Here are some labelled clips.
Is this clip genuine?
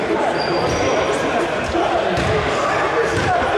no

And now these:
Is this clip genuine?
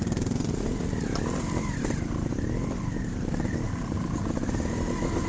no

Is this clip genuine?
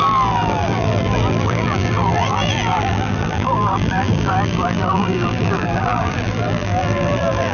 no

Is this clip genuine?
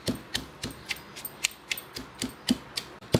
yes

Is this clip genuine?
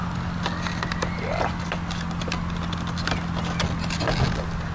yes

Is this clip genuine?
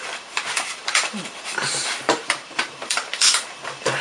no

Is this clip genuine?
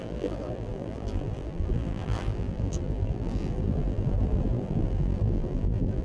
no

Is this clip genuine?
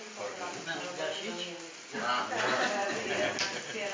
yes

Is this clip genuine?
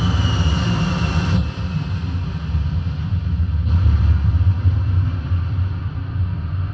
yes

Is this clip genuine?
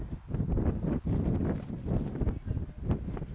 yes